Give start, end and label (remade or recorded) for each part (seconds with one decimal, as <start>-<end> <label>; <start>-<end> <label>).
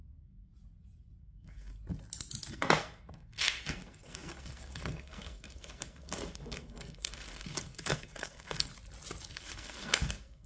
0.0-0.5 remade; 0.5-1.2 recorded; 1.2-1.7 remade; 1.7-2.5 recorded; 2.5-8.7 remade; 8.7-9.3 recorded; 9.3-10.5 remade